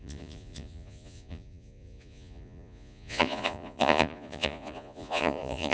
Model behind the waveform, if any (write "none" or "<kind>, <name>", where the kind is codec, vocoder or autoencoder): vocoder, Vocos